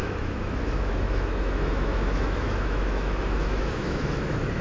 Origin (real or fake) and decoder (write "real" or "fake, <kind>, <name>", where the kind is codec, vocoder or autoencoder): fake, autoencoder, DAC-VAE